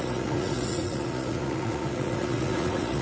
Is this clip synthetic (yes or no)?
yes